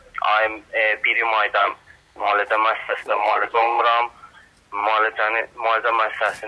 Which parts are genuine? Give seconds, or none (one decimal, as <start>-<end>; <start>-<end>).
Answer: 0.0-1.6; 2.3-2.8; 3.8-6.5